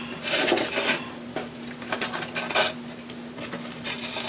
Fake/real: real